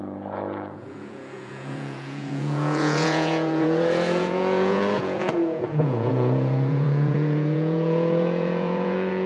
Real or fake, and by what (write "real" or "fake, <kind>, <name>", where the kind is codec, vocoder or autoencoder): fake, vocoder, Vocos